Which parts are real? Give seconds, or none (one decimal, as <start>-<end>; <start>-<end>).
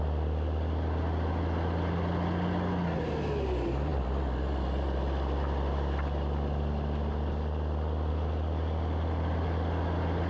0.0-10.3